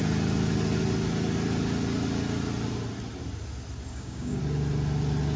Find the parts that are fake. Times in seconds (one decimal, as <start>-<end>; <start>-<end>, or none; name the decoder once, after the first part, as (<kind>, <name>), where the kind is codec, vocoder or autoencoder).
3.9-4.4 (codec, DAC)